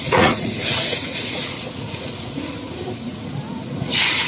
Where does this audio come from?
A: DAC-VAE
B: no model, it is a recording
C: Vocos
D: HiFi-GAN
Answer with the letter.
C